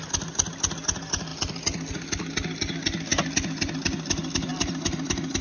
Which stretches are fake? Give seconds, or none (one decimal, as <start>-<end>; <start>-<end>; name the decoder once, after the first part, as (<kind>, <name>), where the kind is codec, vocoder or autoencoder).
4.5-5.4 (vocoder, BigVGAN v2)